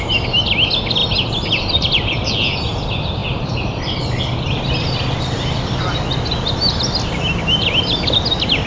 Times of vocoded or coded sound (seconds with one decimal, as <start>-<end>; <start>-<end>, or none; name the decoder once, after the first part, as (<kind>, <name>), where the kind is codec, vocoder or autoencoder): 1.0-2.3 (vocoder, BigVGAN v2); 3.2-5.8